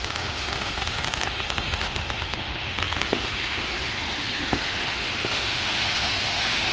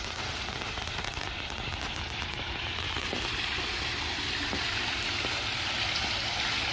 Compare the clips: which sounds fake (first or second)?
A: first